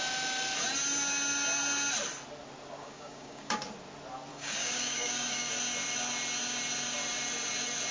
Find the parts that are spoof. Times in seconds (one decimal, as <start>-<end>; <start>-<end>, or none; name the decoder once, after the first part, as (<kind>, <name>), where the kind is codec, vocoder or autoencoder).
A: 2.8-3.6 (codec, DAC); 4.3-5.5